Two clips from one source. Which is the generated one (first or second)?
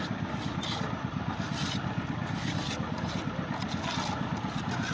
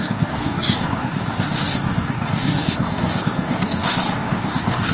second